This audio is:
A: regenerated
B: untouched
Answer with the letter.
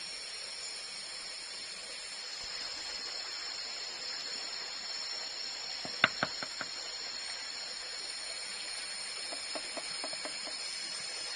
B